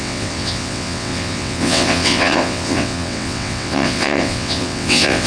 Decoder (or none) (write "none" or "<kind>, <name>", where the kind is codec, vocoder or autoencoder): vocoder, WaveNeXt